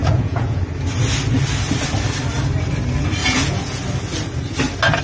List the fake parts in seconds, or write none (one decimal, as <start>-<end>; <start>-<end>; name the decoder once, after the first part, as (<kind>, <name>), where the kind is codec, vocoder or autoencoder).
0.0-0.6 (vocoder, Vocos); 3.2-3.8